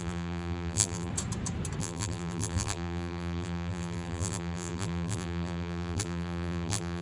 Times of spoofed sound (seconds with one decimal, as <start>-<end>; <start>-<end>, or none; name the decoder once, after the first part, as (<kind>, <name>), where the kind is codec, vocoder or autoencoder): 0.0-1.1 (vocoder, BigVGAN v2); 1.8-7.0